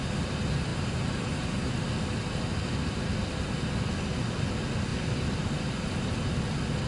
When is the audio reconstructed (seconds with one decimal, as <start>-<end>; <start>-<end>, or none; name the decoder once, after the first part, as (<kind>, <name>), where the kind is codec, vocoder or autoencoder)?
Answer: 0.7-1.8 (vocoder, BigVGAN v2)